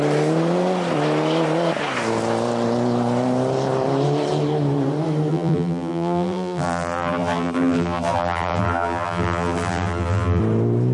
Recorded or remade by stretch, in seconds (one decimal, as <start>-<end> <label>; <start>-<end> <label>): 0.0-5.3 recorded; 5.3-10.4 remade; 10.4-10.9 recorded